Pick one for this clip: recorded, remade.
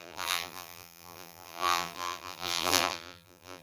remade